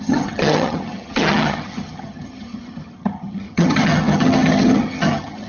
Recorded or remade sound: remade